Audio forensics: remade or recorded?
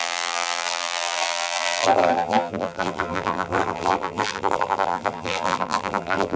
remade